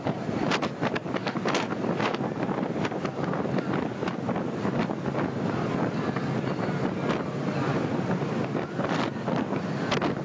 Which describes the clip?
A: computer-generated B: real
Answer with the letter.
B